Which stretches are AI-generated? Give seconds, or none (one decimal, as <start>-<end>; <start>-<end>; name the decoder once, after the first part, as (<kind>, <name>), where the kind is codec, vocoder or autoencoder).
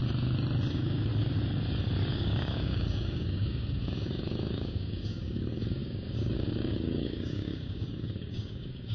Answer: 0.7-1.1 (codec, DAC); 2.1-8.9